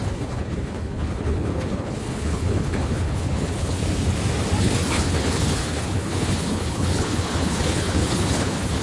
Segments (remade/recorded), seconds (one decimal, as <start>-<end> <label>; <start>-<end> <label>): 0.0-3.8 remade; 3.8-4.6 recorded; 4.6-8.8 remade